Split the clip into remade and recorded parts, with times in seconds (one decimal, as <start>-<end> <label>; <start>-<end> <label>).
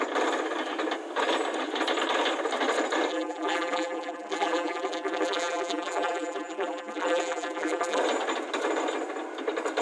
0.0-3.1 recorded; 3.1-8.0 remade; 8.0-9.8 recorded